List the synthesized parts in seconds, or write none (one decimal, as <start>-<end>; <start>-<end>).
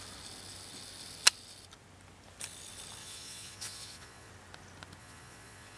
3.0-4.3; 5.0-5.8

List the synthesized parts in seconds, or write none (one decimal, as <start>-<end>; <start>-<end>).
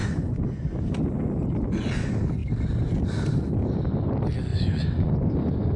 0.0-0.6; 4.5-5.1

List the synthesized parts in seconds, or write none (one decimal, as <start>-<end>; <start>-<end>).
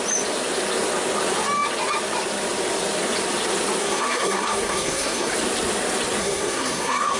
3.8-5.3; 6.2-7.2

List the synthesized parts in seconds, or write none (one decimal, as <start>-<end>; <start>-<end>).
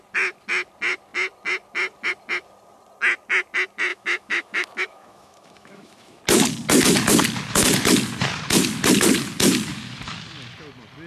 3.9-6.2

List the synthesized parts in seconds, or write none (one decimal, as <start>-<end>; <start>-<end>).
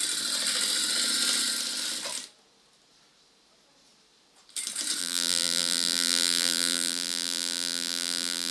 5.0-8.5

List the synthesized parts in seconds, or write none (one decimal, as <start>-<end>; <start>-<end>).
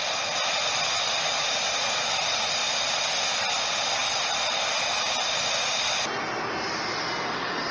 none